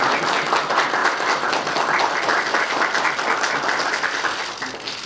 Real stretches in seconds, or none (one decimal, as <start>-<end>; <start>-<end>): 0.0-5.1